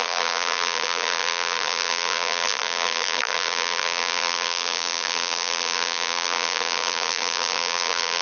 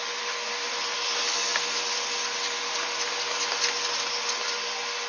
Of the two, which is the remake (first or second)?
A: first